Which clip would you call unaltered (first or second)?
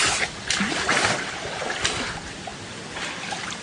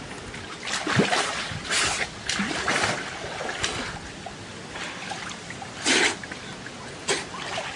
second